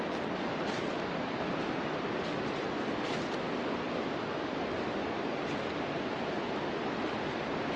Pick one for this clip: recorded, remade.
recorded